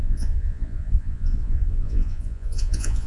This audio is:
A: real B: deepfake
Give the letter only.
B